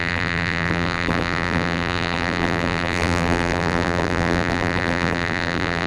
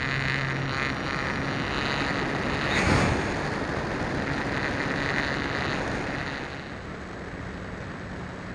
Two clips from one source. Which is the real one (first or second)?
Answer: second